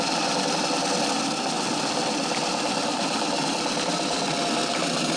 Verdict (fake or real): real